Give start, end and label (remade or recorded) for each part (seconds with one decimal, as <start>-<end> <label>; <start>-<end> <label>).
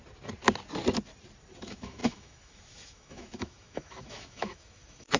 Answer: 0.0-1.6 recorded; 1.6-5.2 remade